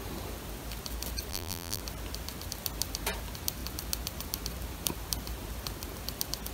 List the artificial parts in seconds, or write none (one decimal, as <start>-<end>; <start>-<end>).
1.3-1.8